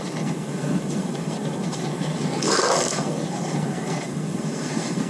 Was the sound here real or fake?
fake